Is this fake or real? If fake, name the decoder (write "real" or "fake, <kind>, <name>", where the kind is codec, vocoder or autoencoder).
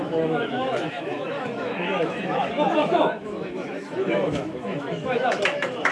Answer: fake, autoencoder, DAC-VAE